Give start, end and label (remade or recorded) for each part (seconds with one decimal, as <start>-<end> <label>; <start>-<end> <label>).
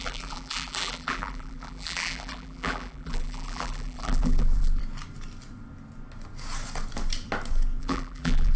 0.0-4.8 remade; 4.8-7.8 recorded; 7.8-8.6 remade